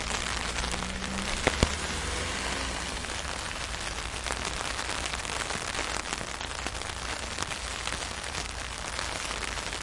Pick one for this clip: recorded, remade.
recorded